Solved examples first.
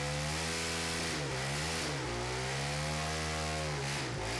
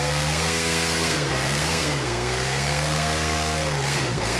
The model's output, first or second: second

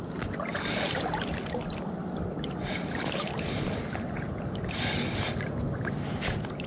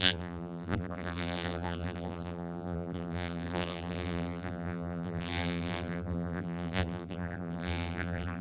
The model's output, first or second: second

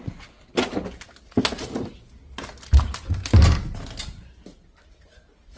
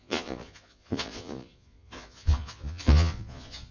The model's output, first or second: second